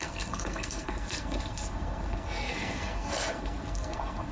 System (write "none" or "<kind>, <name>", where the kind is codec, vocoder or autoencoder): codec, SNAC